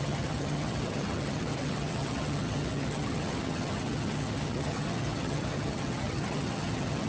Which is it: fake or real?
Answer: fake